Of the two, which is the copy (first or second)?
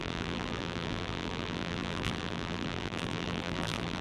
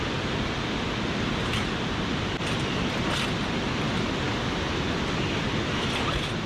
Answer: first